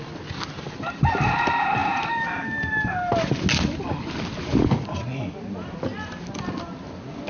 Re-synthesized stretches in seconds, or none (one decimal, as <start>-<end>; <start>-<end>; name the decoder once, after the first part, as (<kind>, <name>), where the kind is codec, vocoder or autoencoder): none